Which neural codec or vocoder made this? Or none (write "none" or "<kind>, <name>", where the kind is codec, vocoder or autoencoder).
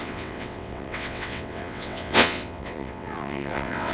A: vocoder, WaveNeXt